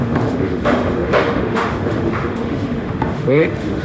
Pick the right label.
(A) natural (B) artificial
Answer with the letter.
B